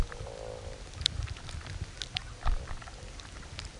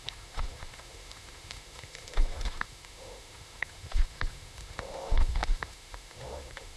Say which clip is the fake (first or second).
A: second